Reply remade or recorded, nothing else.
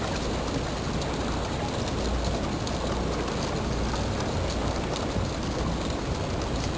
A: recorded